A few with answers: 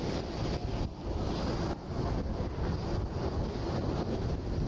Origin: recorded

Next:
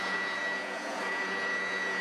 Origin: remade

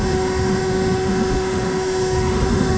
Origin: remade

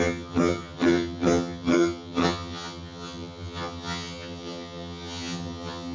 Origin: remade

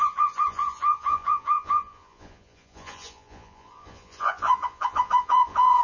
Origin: remade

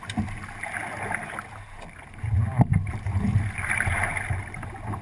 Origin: recorded